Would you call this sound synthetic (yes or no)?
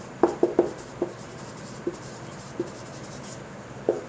yes